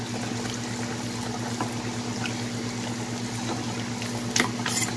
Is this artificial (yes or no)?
no